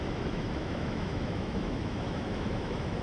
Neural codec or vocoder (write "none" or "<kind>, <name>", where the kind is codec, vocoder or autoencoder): autoencoder, DAC-VAE